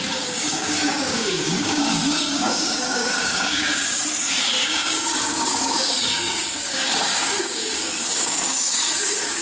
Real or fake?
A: fake